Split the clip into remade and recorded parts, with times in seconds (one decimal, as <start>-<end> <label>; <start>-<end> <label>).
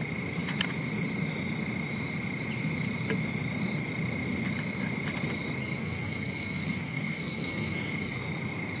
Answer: 0.0-5.6 recorded; 5.6-8.2 remade; 8.2-8.8 recorded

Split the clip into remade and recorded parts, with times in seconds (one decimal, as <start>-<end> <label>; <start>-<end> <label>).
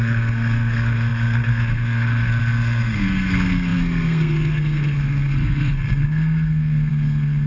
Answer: 0.0-7.5 remade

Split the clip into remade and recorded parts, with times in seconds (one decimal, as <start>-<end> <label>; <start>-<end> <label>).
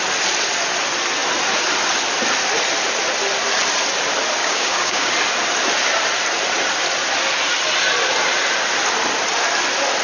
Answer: 0.0-4.4 recorded; 4.4-5.1 remade; 5.1-10.0 recorded